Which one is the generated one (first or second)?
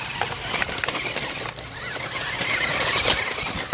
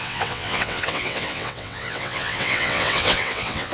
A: second